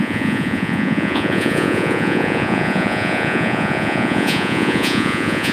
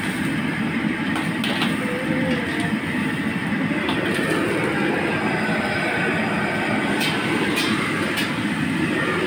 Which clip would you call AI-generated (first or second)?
first